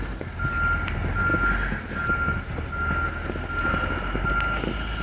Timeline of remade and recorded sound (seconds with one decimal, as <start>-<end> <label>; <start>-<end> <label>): 0.0-5.0 recorded